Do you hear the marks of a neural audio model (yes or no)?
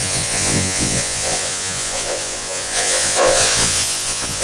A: yes